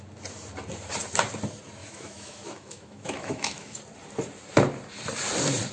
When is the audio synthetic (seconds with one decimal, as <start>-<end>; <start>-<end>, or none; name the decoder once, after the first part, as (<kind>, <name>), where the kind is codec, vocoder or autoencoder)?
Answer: 1.8-3.8 (autoencoder, DAC-VAE)